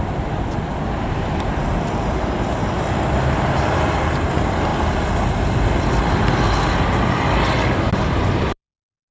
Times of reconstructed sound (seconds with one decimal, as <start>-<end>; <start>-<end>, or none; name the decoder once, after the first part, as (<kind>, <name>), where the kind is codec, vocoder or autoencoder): 0.0-4.7 (vocoder, BigVGAN v2); 7.9-9.1